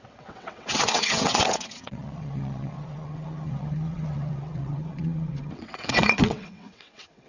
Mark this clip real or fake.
fake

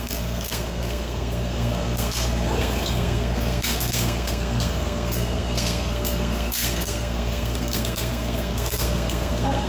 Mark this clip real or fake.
fake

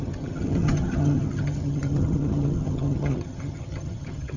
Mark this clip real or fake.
fake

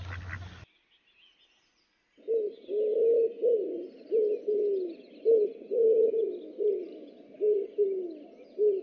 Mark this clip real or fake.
real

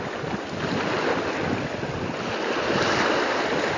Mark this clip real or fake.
real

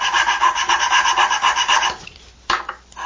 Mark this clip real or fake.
real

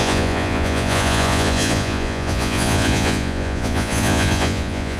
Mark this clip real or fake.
fake